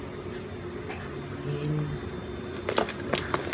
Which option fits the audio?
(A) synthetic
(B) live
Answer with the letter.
B